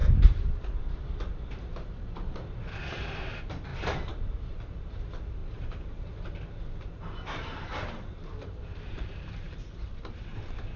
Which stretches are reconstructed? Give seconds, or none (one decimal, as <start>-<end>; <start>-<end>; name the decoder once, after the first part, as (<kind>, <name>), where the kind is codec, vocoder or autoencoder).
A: 0.0-0.8 (vocoder, BigVGAN v2); 5.4-9.6